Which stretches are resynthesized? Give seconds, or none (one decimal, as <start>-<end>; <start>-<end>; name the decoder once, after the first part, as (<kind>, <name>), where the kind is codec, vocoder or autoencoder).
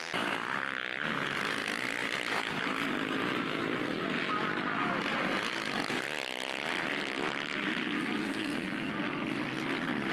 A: 8.3-8.9 (codec, SNAC)